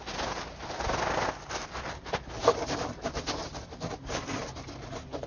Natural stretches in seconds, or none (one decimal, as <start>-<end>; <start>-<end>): 0.0-1.6; 4.4-5.3